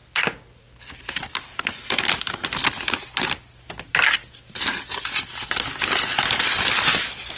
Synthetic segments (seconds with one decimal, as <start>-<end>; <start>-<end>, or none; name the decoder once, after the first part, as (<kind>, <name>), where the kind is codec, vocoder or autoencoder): 0.6-2.6 (vocoder, BigVGAN v2); 7.0-7.4